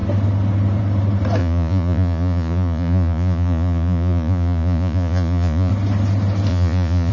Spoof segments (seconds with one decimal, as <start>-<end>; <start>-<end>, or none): 1.4-5.7; 6.5-7.1